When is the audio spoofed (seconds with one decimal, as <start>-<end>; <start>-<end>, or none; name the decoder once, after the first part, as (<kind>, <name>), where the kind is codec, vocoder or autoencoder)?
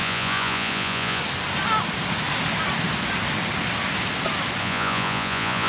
0.0-1.2 (vocoder, Vocos); 4.6-5.7